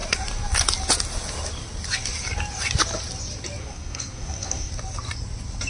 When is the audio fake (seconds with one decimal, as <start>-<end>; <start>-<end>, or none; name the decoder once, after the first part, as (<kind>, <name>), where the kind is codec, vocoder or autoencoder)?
3.6-4.7 (codec, SNAC)